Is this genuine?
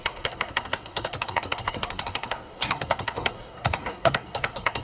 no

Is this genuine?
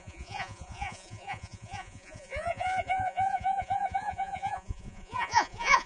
no